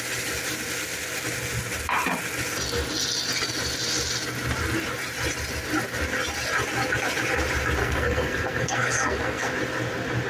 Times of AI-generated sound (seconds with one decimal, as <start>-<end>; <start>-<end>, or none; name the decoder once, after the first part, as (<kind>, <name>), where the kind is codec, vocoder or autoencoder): 7.8-9.5 (codec, SNAC)